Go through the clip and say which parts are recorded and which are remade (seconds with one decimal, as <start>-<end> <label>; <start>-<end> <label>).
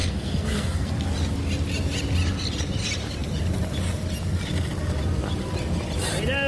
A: 0.0-0.9 remade; 0.9-6.5 recorded